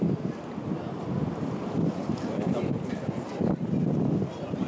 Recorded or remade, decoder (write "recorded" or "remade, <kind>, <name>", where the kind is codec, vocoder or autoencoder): recorded